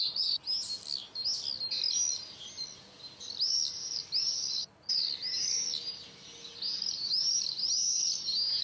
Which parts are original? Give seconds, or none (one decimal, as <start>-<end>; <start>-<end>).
0.0-8.6